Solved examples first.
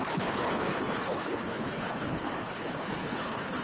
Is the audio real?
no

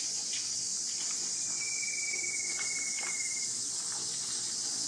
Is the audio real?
yes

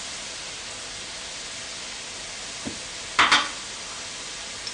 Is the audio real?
yes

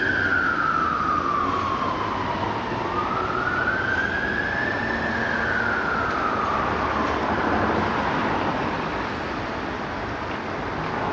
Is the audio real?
yes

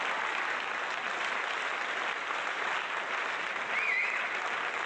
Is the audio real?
yes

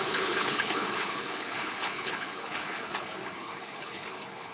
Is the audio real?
no